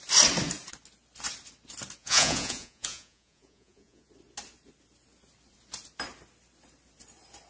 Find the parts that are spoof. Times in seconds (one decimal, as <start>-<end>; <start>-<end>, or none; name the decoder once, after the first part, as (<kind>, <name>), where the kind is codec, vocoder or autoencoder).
2.0-4.1 (vocoder, Vocos)

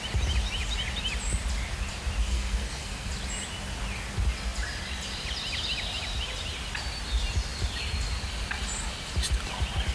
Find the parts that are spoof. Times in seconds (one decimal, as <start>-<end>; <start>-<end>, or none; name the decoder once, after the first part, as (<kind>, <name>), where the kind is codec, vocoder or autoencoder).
2.2-3.1 (codec, SNAC)

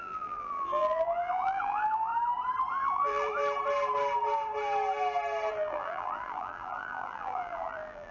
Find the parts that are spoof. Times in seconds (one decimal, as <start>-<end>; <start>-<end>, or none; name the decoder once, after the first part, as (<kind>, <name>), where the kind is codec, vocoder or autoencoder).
0.0-2.1 (vocoder, BigVGAN v2); 2.7-3.3; 5.5-8.1

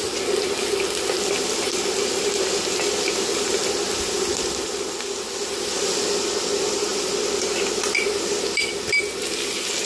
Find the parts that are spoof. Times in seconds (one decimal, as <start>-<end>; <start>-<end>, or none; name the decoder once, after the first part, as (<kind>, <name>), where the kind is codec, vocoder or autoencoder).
none

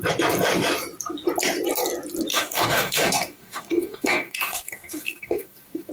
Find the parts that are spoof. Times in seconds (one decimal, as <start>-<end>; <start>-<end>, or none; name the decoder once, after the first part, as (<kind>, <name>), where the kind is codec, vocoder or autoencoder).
2.3-5.9 (codec, DAC)

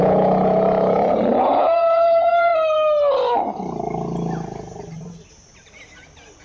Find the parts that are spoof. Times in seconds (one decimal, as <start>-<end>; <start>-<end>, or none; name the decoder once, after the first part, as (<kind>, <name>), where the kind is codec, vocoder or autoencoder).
0.0-2.5 (vocoder, Vocos)